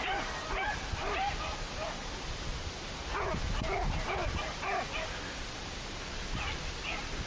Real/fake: real